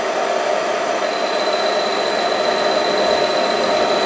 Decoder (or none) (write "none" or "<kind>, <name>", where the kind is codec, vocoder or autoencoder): none